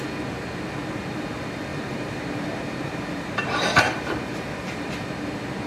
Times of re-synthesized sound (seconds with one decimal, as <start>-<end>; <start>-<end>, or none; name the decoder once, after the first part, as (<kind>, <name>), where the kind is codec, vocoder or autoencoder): 1.7-5.1 (vocoder, BigVGAN v2)